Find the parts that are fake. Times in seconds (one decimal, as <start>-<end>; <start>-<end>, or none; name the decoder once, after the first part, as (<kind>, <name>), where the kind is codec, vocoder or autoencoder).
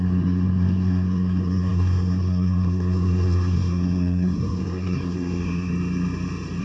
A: 0.0-5.7 (codec, SNAC)